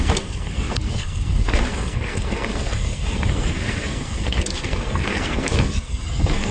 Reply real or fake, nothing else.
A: fake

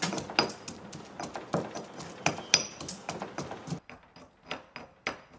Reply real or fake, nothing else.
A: real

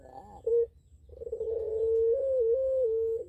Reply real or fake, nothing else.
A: real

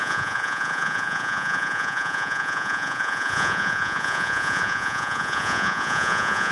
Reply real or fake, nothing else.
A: fake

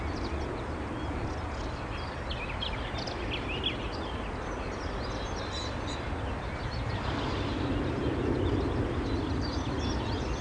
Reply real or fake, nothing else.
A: real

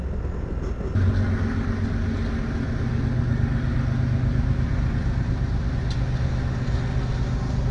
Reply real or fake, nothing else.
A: real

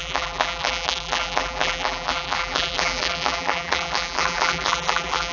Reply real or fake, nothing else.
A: fake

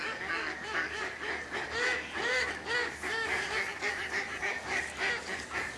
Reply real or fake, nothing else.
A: fake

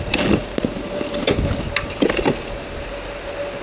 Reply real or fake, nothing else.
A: real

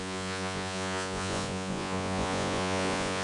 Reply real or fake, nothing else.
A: fake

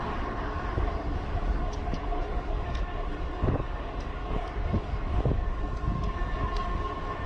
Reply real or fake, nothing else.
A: fake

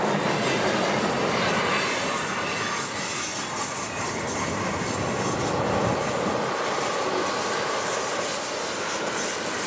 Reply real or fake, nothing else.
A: real